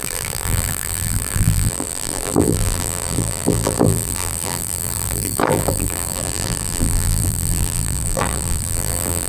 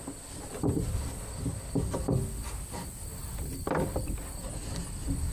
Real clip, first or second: second